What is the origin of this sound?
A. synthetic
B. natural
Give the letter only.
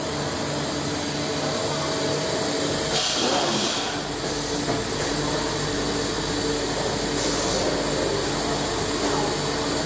B